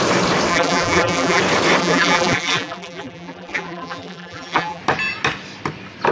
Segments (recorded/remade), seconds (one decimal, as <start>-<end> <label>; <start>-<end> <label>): 0.0-0.5 recorded; 0.5-1.4 remade; 1.4-1.8 recorded; 1.8-4.8 remade; 4.8-6.1 recorded